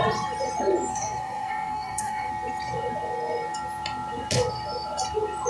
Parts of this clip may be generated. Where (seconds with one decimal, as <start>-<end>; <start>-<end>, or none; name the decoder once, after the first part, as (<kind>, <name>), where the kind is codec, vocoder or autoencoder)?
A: 0.9-2.3 (codec, SNAC)